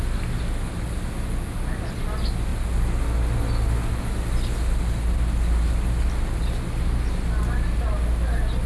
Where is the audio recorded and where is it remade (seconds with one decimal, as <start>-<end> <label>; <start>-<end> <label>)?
0.0-8.7 recorded